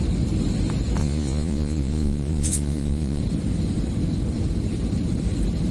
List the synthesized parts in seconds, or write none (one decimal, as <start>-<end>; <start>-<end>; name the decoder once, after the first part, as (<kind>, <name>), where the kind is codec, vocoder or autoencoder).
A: 1.0-3.2 (vocoder, Vocos)